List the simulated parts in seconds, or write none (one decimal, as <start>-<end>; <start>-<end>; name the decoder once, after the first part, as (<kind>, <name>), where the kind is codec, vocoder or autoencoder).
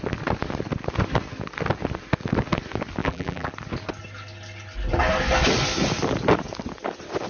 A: 3.0-3.5 (vocoder, BigVGAN v2)